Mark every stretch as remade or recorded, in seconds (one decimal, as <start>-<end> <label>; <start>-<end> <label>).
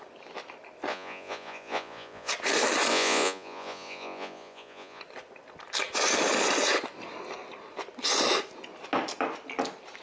0.0-0.9 recorded; 0.9-2.3 remade; 2.3-2.9 recorded; 2.9-5.0 remade; 5.0-10.0 recorded